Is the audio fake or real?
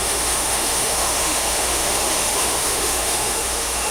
fake